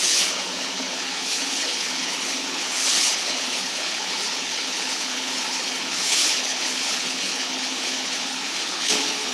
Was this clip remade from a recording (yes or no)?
yes